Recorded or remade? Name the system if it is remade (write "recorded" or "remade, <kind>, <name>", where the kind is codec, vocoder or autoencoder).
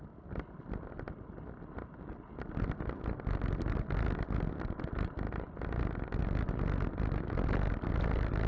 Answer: recorded